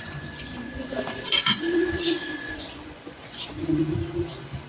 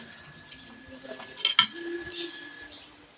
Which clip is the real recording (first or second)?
second